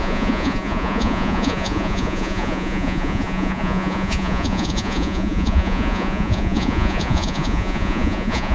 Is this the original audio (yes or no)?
no